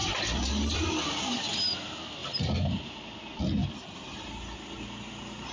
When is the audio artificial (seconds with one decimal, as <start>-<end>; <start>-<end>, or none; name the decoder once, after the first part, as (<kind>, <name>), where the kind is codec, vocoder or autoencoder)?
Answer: 0.0-1.3 (vocoder, BigVGAN v2)